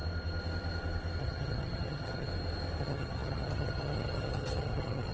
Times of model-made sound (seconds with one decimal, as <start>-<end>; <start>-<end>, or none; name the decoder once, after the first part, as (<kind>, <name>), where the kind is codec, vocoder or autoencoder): 1.2-2.3 (vocoder, HiFi-GAN); 2.8-5.1